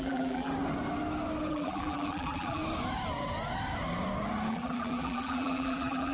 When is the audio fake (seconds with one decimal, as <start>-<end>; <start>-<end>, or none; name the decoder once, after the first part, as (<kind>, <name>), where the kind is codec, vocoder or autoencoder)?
0.0-0.5 (vocoder, BigVGAN v2); 1.5-2.6; 4.5-6.1